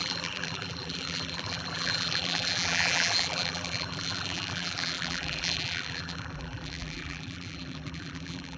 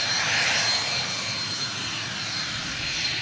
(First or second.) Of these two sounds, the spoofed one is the first